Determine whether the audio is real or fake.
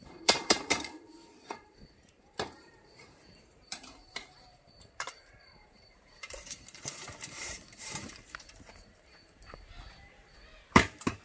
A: fake